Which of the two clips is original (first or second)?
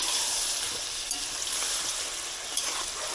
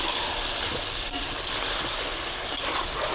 first